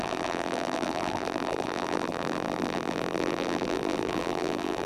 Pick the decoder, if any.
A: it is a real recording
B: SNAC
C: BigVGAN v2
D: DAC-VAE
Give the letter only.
C